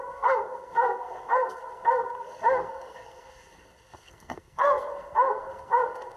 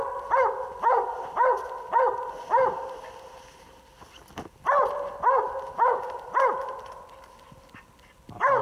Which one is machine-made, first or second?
first